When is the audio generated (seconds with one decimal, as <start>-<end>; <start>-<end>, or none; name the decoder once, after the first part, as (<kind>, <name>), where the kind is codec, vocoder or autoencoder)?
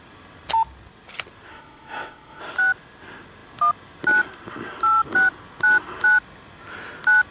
1.5-2.4 (codec, ZipCodec)